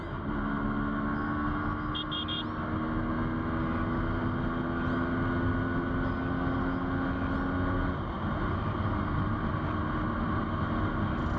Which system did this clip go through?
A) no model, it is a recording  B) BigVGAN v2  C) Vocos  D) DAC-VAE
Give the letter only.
A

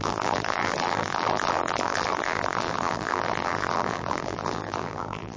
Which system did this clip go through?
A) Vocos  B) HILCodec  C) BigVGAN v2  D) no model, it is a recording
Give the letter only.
C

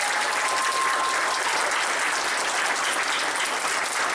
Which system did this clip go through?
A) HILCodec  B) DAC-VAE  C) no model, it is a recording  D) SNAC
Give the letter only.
C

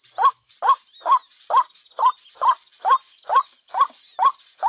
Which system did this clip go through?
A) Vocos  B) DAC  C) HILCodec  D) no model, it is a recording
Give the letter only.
D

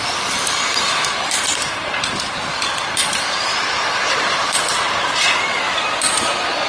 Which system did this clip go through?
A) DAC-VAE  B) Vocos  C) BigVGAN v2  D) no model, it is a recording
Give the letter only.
C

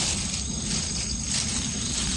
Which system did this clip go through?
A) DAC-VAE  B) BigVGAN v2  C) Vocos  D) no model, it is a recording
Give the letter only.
D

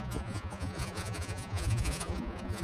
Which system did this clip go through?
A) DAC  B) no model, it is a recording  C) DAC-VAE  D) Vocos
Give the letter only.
D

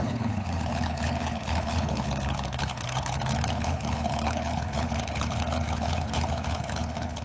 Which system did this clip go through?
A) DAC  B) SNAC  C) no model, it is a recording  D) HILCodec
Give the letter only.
D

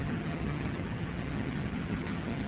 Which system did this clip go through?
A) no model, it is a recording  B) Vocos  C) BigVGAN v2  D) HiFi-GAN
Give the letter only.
D